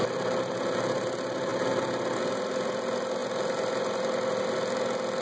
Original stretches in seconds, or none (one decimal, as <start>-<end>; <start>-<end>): 0.0-5.2